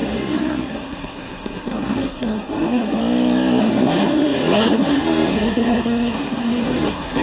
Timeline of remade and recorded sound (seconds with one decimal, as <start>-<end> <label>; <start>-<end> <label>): 0.0-3.0 remade; 3.0-3.6 recorded; 3.6-7.2 remade